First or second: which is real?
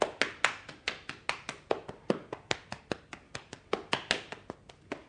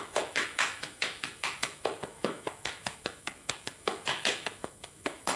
first